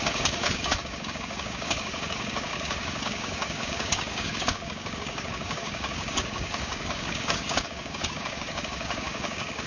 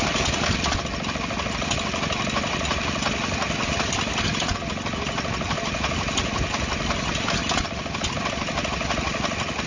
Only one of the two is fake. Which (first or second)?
first